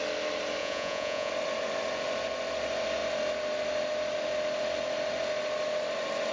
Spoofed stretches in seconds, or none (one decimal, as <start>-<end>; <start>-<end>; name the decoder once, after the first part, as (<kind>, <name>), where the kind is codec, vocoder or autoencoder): 0.6-1.3 (vocoder, Vocos)